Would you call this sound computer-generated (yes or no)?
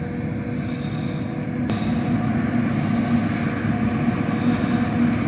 no